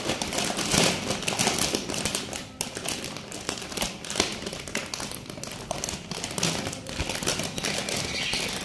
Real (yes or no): yes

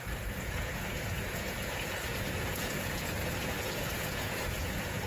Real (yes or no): no